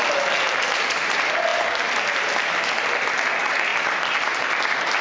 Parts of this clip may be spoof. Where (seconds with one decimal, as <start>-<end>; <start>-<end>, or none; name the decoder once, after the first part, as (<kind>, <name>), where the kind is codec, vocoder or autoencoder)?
none